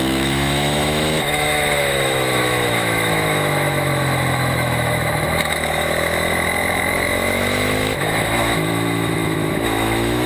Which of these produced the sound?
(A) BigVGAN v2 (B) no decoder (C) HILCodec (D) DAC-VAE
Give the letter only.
D